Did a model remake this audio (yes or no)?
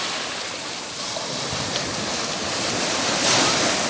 no